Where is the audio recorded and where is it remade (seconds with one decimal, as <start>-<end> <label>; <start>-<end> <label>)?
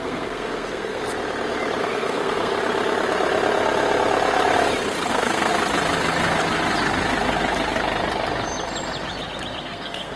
0.0-1.0 remade; 1.0-1.8 recorded; 1.8-2.5 remade; 2.5-5.1 recorded; 5.1-5.5 remade; 5.5-9.6 recorded; 9.6-10.2 remade